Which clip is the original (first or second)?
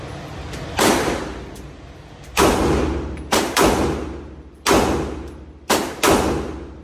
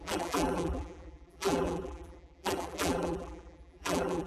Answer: first